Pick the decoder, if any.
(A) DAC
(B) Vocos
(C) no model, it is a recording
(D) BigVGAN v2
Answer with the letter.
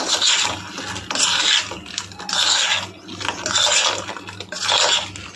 C